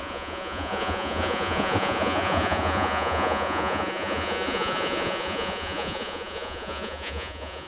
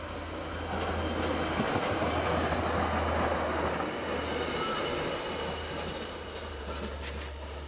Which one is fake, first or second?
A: first